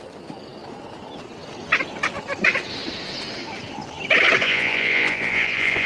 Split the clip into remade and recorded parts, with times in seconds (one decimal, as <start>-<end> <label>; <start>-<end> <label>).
0.0-4.4 recorded; 4.4-5.9 remade